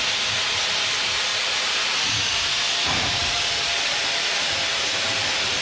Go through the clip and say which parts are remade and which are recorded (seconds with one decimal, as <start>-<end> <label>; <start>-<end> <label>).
0.0-1.3 recorded; 1.3-4.1 remade; 4.1-5.6 recorded